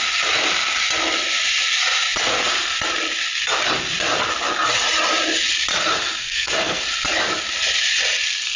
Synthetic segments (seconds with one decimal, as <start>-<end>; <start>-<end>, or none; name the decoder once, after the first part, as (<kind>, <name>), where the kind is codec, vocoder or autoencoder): 6.2-6.8 (codec, SNAC)